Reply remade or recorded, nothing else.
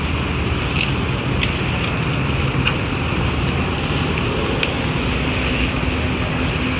recorded